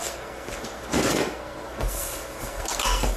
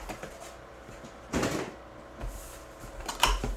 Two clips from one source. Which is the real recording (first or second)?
second